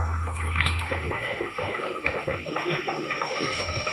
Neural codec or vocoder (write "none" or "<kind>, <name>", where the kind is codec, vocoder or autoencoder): autoencoder, DAC-VAE